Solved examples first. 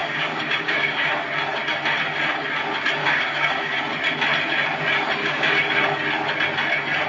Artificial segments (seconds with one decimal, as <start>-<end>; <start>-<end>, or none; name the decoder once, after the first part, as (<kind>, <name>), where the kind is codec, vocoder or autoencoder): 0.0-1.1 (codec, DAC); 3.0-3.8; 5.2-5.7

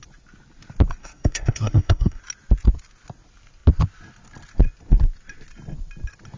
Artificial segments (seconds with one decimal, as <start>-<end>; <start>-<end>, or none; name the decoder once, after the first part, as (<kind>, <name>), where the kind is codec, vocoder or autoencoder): 1.0-2.2 (codec, SNAC)

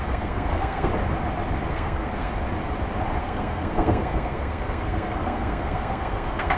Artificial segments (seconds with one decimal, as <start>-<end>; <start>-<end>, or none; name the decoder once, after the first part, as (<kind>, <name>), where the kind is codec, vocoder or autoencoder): 0.0-0.9 (codec, SNAC); 1.7-2.3; 3.2-6.6